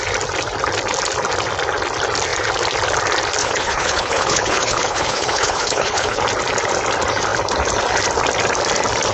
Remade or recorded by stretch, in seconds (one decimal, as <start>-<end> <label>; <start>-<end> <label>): 0.0-3.4 recorded; 3.4-6.2 remade; 6.2-9.1 recorded